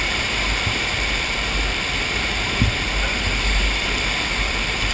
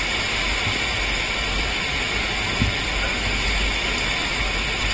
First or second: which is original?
second